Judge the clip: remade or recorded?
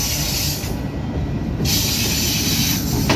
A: recorded